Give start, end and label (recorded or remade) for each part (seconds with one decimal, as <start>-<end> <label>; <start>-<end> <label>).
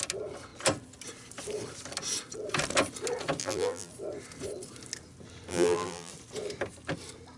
0.0-3.4 recorded; 3.4-3.9 remade; 3.9-5.5 recorded; 5.5-6.1 remade; 6.1-7.4 recorded